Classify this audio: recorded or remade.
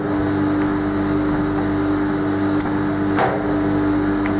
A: recorded